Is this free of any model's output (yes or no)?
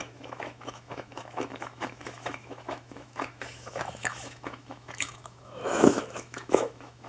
no